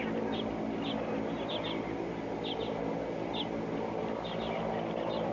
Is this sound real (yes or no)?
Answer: yes